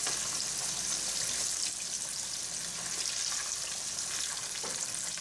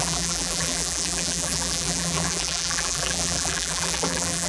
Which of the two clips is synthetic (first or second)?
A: second